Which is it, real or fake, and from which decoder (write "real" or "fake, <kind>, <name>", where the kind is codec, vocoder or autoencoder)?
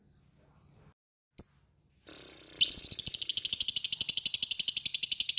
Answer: real